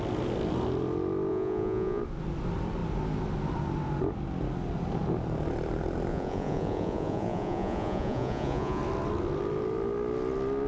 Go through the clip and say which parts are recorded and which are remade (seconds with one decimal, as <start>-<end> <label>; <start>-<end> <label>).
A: 0.0-1.3 recorded; 1.3-2.0 remade; 2.0-6.1 recorded; 6.1-8.8 remade; 8.8-10.7 recorded